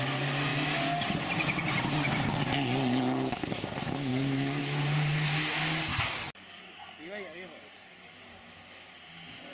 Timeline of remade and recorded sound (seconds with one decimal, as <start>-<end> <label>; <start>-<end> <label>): 0.0-4.1 recorded; 4.1-4.6 remade; 4.6-5.9 recorded; 5.9-8.3 remade; 8.3-9.5 recorded